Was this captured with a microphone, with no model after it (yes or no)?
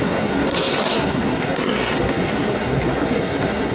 no